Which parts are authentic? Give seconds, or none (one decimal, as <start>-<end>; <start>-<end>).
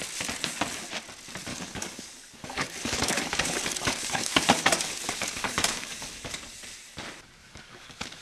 0.0-1.5; 6.4-7.4